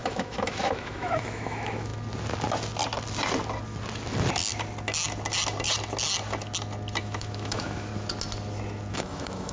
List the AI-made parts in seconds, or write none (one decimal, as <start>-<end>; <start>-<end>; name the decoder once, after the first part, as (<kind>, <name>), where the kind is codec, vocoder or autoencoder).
0.0-1.9 (autoencoder, DAC-VAE); 7.0-7.9; 8.9-9.5